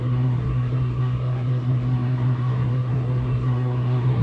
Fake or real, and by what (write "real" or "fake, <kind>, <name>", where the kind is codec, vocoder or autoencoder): fake, codec, SNAC